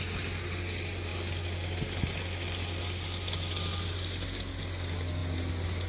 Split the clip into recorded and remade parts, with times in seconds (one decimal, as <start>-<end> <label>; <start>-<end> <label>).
0.0-5.9 recorded